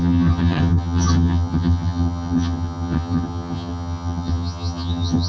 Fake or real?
fake